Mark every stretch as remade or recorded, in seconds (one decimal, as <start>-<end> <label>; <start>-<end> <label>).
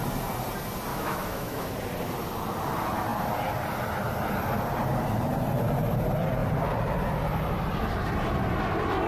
0.0-0.9 recorded; 0.9-1.7 remade; 1.7-9.1 recorded